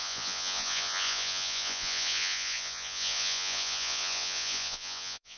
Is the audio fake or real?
fake